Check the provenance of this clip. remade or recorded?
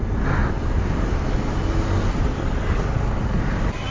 recorded